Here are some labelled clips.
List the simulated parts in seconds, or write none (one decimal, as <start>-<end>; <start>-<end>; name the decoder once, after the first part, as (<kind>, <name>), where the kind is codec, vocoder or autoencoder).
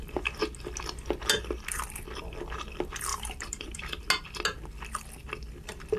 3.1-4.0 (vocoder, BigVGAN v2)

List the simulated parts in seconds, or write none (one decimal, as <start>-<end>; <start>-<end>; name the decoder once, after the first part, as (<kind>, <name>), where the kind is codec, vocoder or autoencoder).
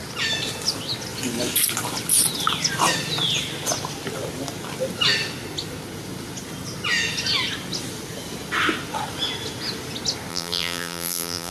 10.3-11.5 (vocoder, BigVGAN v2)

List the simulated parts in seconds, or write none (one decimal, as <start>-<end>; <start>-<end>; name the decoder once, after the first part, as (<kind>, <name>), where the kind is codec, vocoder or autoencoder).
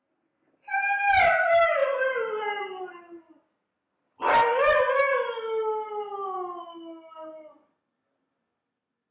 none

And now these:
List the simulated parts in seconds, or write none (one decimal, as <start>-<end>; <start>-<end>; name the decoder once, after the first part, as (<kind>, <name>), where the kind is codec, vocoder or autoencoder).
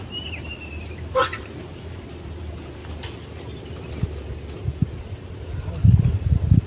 0.0-2.8 (vocoder, BigVGAN v2); 5.0-6.7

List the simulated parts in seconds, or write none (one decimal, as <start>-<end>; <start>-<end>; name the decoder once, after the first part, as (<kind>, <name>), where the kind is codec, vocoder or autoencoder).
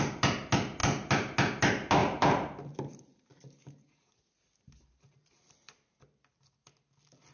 2.0-6.0 (vocoder, BigVGAN v2)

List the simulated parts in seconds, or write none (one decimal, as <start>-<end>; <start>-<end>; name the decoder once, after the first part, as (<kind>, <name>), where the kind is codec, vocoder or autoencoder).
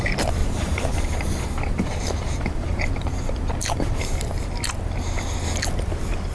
0.4-4.2 (vocoder, BigVGAN v2)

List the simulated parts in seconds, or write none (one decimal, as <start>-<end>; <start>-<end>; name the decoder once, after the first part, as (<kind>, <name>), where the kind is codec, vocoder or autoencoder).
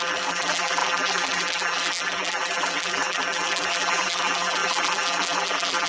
0.0-5.9 (vocoder, BigVGAN v2)